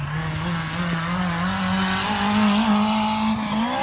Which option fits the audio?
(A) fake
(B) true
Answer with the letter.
B